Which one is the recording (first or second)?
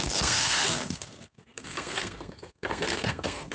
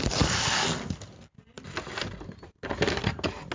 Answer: second